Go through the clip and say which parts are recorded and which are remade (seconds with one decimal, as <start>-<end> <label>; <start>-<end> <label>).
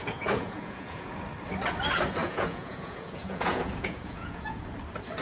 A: 0.0-1.1 remade; 1.1-2.2 recorded; 2.2-4.6 remade; 4.6-5.2 recorded